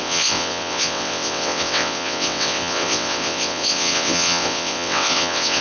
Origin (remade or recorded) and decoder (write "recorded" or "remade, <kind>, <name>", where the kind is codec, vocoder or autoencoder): remade, vocoder, WaveNeXt